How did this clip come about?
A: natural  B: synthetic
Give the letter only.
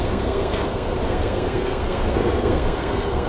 B